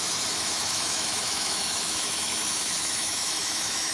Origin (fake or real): fake